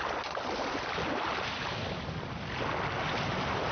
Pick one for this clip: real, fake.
real